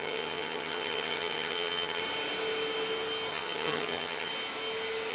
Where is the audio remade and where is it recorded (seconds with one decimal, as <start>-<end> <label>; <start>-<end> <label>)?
0.0-2.0 remade; 2.0-3.3 recorded; 3.3-4.3 remade; 4.3-5.1 recorded